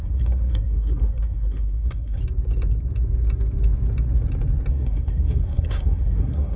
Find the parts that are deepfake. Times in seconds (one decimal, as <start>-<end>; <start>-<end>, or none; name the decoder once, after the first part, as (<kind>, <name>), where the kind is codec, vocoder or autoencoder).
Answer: 0.0-2.2 (codec, SNAC); 4.7-6.6